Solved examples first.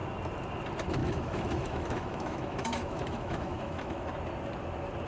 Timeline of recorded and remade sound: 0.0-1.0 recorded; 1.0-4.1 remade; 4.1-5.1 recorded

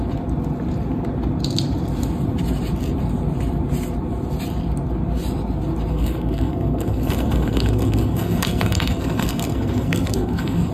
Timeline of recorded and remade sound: 0.0-5.9 recorded; 5.9-10.7 remade

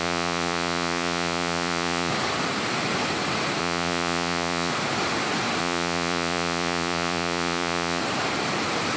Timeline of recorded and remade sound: 0.0-2.1 remade; 2.1-3.6 recorded; 3.6-4.7 remade; 4.7-5.6 recorded; 5.6-8.0 remade; 8.0-9.0 recorded

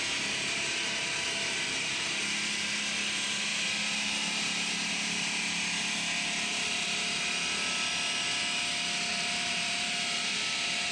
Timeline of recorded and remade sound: 0.0-6.5 recorded; 6.5-7.3 remade; 7.3-9.1 recorded; 9.1-10.2 remade; 10.2-10.9 recorded